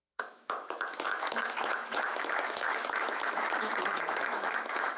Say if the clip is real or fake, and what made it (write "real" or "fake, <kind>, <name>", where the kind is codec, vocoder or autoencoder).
fake, autoencoder, DAC-VAE